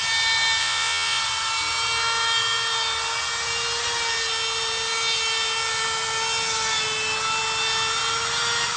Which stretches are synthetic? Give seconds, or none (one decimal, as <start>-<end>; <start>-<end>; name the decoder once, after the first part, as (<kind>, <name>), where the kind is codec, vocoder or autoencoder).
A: 0.6-1.2 (vocoder, Vocos)